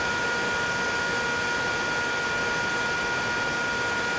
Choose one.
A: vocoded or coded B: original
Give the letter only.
B